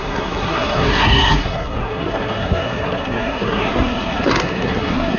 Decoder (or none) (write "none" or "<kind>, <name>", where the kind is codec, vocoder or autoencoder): codec, SNAC